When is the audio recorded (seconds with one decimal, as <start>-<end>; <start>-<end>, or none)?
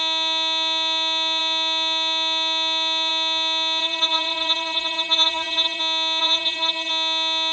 0.0-3.8; 5.8-6.2; 6.9-7.5